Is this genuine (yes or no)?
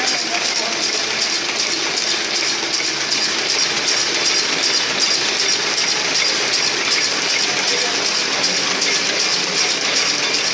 yes